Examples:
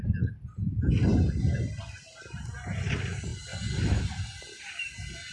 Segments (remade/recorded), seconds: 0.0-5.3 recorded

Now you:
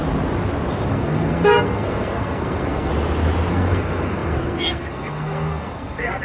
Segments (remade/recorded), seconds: 0.0-0.9 recorded; 0.9-2.9 remade; 2.9-3.5 recorded; 3.5-6.2 remade

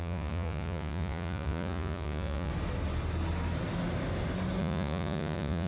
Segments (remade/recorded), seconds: 0.0-2.5 remade; 2.5-4.6 recorded; 4.6-5.7 remade

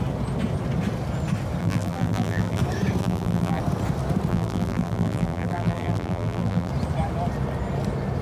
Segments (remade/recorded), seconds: 0.0-1.6 recorded; 1.6-2.6 remade; 2.6-3.0 recorded; 3.0-3.6 remade; 3.6-4.3 recorded; 4.3-6.7 remade; 6.7-8.2 recorded

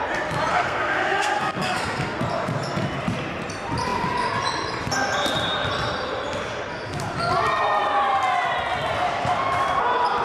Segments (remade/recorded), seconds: 0.0-0.5 recorded; 0.5-2.2 remade; 2.2-10.2 recorded

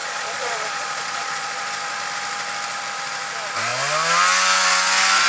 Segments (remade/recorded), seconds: 0.0-1.7 remade; 1.7-5.3 recorded